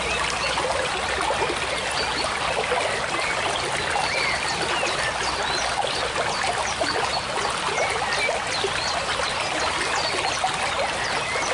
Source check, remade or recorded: recorded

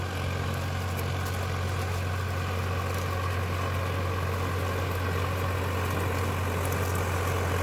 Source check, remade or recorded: recorded